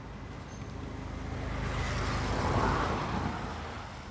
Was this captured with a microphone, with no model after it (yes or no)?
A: yes